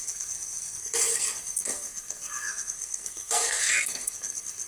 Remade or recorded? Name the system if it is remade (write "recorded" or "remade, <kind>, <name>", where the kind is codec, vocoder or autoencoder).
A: remade, codec, SNAC